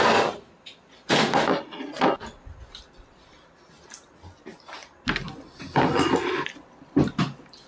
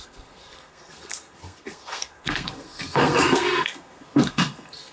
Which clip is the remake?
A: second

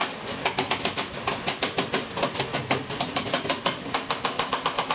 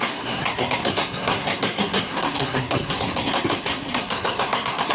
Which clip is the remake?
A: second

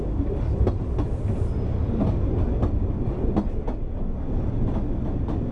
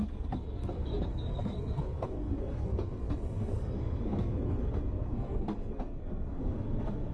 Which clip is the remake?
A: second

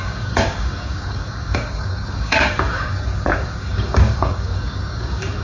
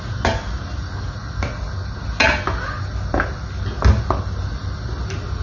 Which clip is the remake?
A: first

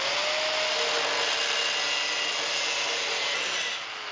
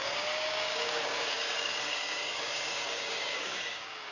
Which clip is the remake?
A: second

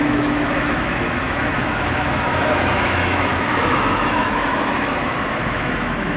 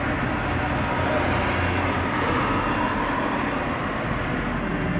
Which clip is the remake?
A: first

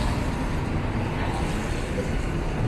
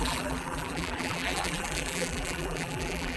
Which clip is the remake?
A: second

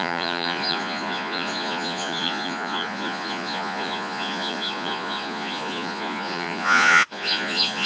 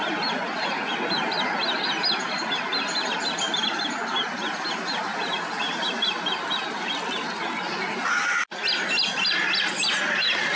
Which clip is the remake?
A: first